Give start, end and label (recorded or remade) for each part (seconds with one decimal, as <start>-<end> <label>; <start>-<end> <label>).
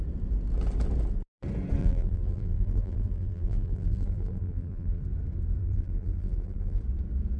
0.0-1.8 recorded; 1.8-5.0 remade; 5.0-5.6 recorded; 5.6-6.8 remade; 6.8-7.4 recorded